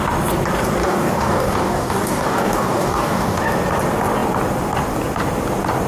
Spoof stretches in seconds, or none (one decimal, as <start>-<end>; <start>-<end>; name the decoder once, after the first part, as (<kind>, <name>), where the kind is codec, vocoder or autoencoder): 0.8-3.4 (codec, DAC)